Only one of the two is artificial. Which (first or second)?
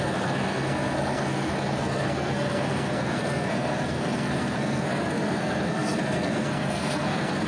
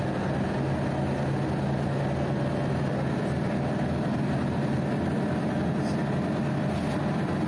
first